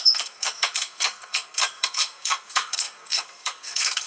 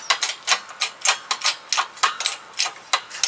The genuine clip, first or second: second